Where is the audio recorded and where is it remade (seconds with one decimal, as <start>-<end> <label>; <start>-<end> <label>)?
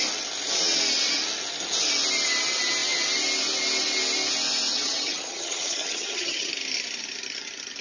0.0-4.7 recorded; 4.7-6.5 remade; 6.5-7.8 recorded